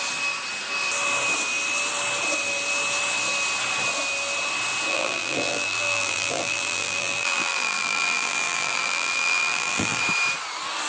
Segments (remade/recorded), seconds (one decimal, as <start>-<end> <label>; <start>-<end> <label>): 0.0-4.9 recorded; 4.9-10.0 remade; 10.0-10.9 recorded